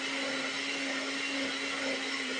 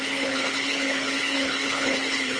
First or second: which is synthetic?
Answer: second